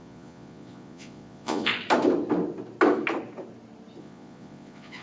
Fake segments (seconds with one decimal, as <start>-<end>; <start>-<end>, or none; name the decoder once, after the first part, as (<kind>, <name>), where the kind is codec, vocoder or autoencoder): 0.0-1.7 (vocoder, Vocos); 4.0-5.0